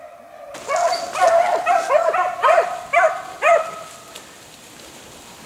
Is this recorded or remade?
recorded